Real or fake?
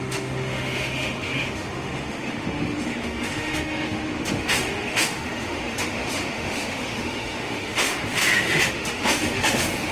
fake